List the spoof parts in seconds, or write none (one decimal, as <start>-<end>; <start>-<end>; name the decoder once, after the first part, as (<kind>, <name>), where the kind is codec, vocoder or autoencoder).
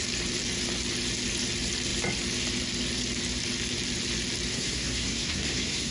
4.5-5.9 (codec, SNAC)